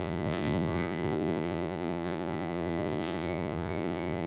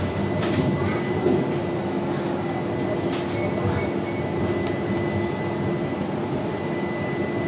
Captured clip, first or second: second